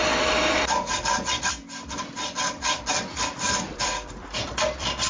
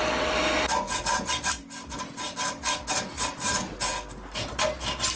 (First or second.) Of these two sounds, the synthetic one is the first